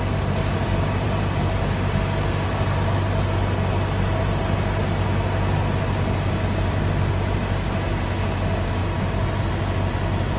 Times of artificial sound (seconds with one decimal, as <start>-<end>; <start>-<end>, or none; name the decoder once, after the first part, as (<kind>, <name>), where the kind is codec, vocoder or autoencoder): 0.6-1.2 (vocoder, BigVGAN v2); 8.8-9.5